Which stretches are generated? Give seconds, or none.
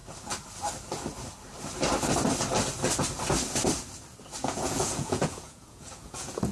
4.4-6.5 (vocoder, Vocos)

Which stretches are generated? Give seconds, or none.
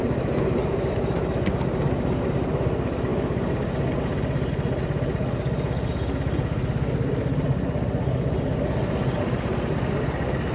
none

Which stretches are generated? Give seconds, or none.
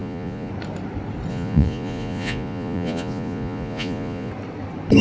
0.0-0.5 (vocoder, Vocos); 1.3-4.3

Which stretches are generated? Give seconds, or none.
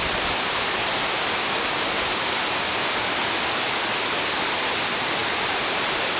none